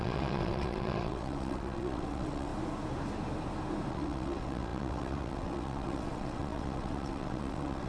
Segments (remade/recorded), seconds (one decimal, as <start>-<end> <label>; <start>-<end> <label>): 0.0-2.5 remade; 2.5-3.9 recorded; 3.9-7.9 remade